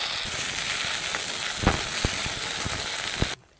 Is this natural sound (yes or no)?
yes